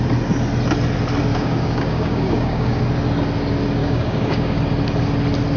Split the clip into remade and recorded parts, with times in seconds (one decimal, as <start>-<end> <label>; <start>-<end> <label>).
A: 0.0-1.3 recorded; 1.3-2.8 remade; 2.8-3.8 recorded; 3.8-4.6 remade; 4.6-5.6 recorded